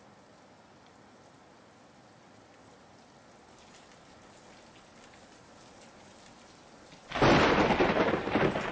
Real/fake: real